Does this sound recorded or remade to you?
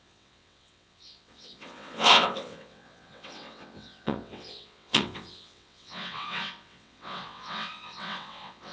remade